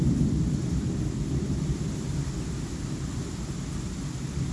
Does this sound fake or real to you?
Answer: fake